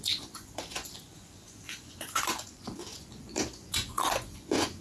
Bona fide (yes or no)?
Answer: no